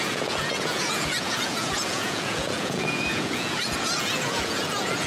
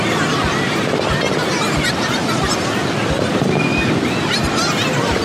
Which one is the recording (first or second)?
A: second